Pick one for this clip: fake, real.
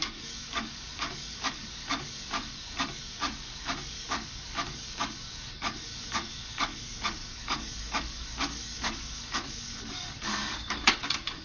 fake